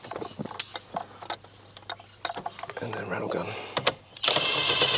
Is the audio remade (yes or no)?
no